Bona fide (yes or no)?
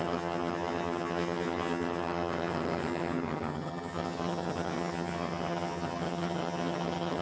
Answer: no